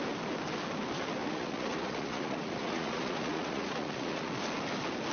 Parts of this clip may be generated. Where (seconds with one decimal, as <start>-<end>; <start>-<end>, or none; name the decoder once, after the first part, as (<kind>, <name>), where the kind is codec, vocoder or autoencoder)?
1.2-4.3 (vocoder, Vocos)